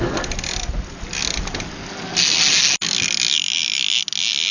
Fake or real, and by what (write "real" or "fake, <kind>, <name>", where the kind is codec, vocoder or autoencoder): real